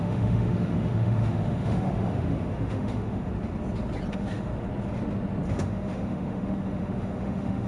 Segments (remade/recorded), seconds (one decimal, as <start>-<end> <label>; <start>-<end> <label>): 0.0-3.3 remade; 3.3-4.1 recorded; 4.1-4.5 remade; 4.5-5.5 recorded; 5.5-7.7 remade